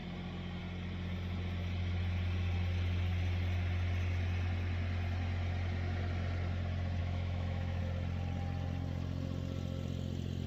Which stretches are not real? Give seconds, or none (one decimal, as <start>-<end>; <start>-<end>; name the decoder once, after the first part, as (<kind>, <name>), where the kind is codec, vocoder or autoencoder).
7.0-7.8 (autoencoder, DAC-VAE)